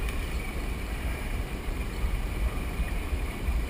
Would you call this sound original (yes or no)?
no